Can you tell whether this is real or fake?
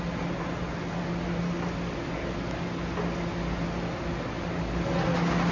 real